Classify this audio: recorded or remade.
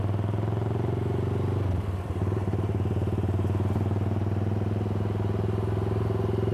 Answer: recorded